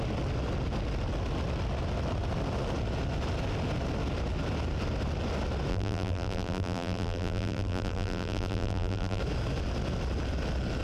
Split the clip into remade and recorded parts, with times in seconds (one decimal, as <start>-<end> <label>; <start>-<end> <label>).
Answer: 0.0-5.7 recorded; 5.7-9.2 remade; 9.2-10.8 recorded

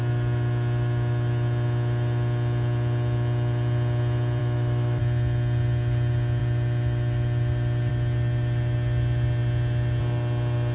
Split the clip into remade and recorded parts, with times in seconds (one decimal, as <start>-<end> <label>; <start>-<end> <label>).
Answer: 0.0-4.4 recorded; 4.4-5.0 remade; 5.0-10.7 recorded

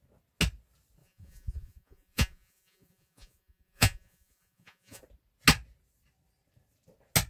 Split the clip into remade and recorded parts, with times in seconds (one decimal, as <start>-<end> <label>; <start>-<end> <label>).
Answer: 0.0-1.0 recorded; 1.0-5.0 remade; 5.0-7.3 recorded